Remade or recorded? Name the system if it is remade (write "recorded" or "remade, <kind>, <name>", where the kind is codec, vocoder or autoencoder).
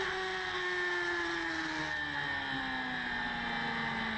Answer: recorded